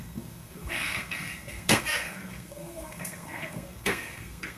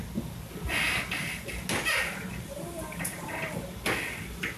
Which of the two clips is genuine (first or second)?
second